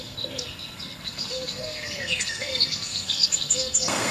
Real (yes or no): no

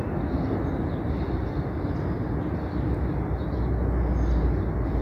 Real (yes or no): yes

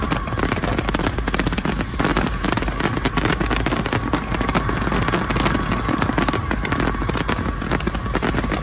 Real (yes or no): yes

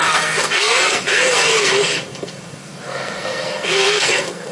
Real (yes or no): no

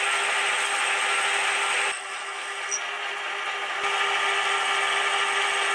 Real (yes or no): yes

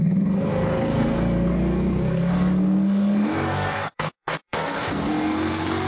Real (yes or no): no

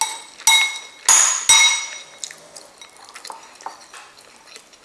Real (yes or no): yes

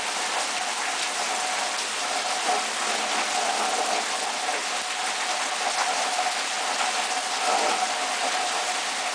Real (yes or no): yes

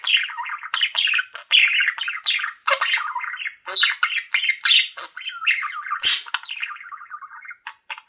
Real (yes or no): yes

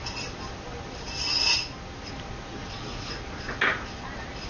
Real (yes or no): yes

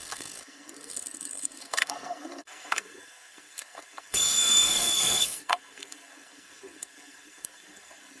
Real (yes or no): no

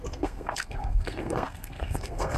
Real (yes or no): no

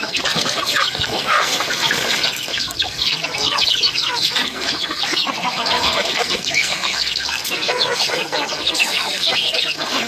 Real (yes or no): no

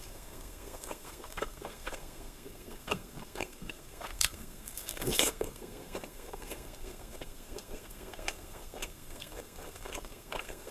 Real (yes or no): no